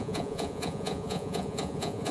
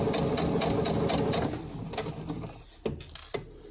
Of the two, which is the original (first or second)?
second